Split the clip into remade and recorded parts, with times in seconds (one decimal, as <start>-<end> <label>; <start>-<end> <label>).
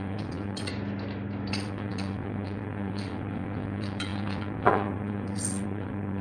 0.0-0.7 remade; 0.7-1.5 recorded; 1.5-6.2 remade